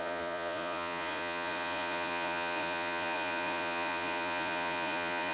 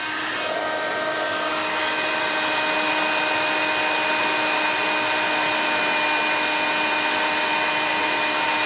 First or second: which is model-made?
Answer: first